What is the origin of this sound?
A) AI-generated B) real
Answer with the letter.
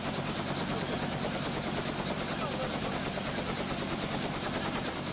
B